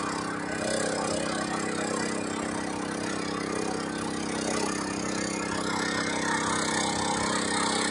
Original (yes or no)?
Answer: yes